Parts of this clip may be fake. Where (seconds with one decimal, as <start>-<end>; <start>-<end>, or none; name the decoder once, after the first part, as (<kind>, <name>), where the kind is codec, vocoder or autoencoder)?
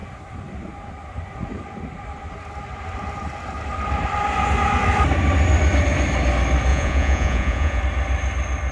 6.7-7.8 (vocoder, Vocos)